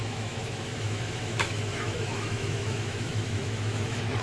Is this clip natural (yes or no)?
no